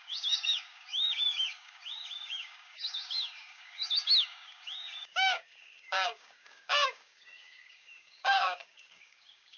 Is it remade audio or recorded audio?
remade